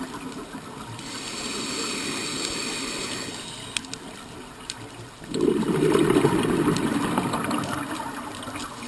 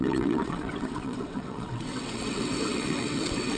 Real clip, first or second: first